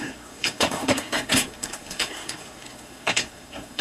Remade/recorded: remade